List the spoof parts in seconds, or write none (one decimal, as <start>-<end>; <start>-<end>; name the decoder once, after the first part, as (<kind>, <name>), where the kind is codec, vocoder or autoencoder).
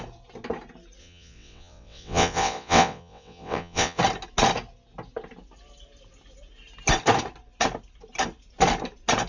1.0-4.0 (vocoder, WaveNeXt)